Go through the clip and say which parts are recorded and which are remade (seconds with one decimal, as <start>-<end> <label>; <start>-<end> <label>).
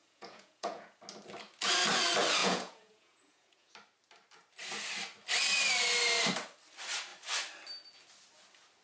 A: 0.0-1.0 remade; 1.0-2.4 recorded; 2.4-3.7 remade; 3.7-8.8 recorded